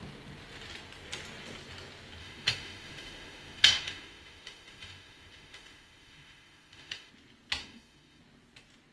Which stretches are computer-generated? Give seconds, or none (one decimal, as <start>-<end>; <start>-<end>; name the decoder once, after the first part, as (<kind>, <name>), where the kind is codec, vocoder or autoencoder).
2.2-7.1 (autoencoder, DAC-VAE); 7.6-8.2